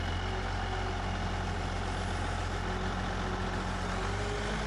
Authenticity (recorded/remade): recorded